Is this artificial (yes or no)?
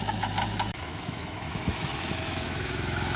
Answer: yes